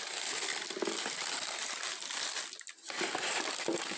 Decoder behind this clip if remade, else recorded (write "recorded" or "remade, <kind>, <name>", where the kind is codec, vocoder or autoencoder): recorded